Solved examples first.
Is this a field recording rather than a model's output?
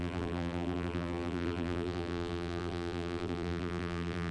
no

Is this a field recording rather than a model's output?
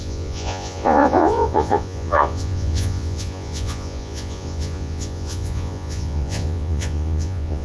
no